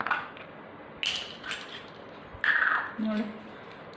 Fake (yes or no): no